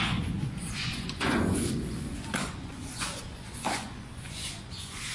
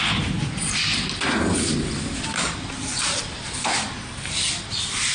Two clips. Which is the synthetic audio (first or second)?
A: first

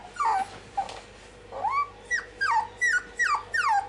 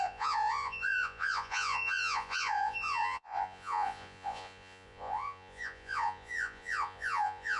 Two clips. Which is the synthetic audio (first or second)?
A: second